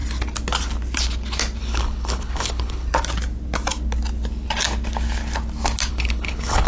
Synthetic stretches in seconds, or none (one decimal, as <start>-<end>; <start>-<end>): 1.6-2.9; 5.9-6.7